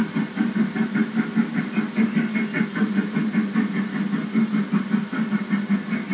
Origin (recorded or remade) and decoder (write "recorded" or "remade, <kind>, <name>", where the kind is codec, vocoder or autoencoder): recorded